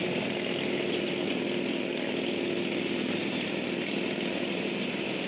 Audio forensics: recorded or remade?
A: recorded